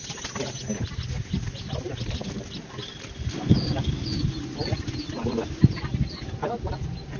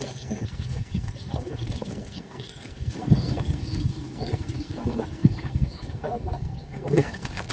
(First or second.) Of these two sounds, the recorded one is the first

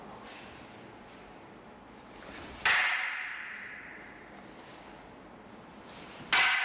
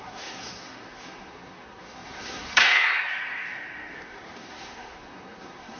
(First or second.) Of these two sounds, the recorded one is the first